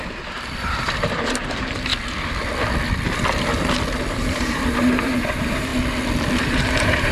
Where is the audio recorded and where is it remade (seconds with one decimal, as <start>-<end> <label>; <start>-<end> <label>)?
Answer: 0.0-1.9 remade; 1.9-4.1 recorded; 4.1-5.7 remade; 5.7-6.4 recorded; 6.4-7.1 remade